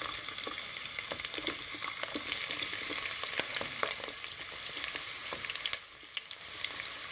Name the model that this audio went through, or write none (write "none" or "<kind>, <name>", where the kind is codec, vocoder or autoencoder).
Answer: none